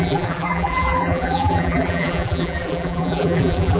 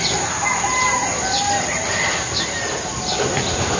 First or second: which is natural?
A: second